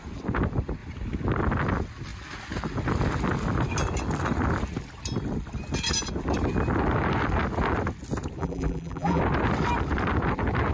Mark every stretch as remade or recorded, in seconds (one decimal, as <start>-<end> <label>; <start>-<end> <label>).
0.0-8.4 recorded; 8.4-9.2 remade; 9.2-10.7 recorded